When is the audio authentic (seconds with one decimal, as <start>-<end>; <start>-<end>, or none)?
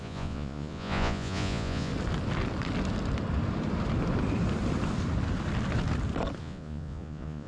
1.9-6.4